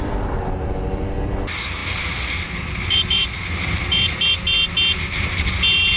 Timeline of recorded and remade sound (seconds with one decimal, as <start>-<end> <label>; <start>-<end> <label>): 0.0-6.0 recorded

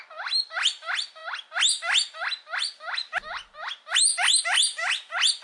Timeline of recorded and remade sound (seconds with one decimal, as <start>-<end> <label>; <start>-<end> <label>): 0.0-5.4 recorded

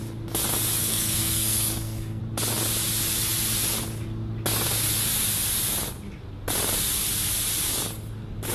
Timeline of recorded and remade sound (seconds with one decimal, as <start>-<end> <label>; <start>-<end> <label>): 0.0-0.8 recorded; 0.8-2.2 remade; 2.2-8.5 recorded

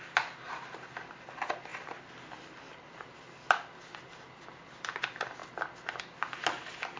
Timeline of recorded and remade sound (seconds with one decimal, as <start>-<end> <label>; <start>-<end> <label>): 0.0-7.0 recorded

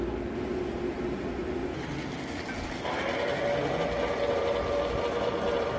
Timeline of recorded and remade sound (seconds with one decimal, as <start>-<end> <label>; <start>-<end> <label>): 0.0-5.8 recorded

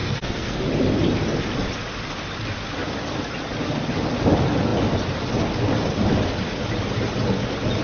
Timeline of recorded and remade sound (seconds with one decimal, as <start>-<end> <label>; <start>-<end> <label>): 0.0-0.6 remade; 0.6-7.8 recorded

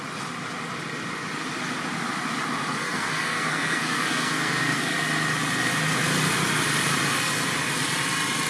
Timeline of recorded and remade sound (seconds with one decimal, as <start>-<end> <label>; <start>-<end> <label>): 0.0-2.8 recorded; 2.8-4.8 remade; 4.8-8.5 recorded